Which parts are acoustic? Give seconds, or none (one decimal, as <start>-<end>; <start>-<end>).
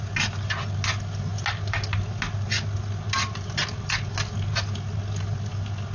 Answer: 0.0-5.9